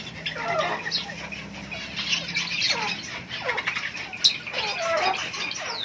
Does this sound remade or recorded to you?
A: recorded